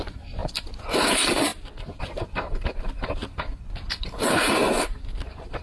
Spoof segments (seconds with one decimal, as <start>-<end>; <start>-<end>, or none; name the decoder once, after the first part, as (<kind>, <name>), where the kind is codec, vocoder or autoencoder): 0.0-0.4 (vocoder, BigVGAN v2); 1.1-1.5; 2.0-3.2; 3.9-4.6